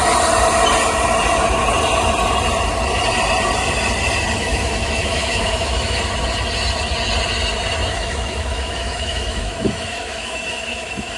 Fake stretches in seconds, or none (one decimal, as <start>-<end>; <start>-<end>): 4.4-6.0; 7.9-11.2